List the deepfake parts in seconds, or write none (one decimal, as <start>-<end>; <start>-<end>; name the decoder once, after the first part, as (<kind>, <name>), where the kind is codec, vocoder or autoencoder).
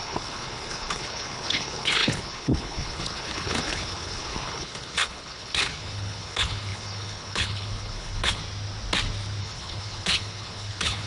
0.0-8.4 (codec, HILCodec); 9.4-11.1